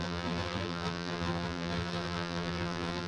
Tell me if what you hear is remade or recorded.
remade